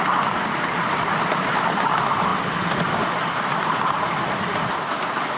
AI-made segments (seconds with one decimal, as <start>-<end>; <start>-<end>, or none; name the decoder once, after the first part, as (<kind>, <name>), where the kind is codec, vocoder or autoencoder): none